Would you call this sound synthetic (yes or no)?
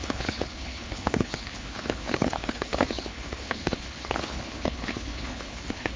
yes